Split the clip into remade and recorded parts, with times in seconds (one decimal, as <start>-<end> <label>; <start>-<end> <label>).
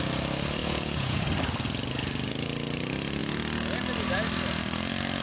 0.0-0.6 recorded; 0.6-1.2 remade; 1.2-5.2 recorded